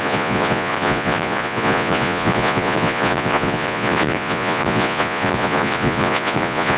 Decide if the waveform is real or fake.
fake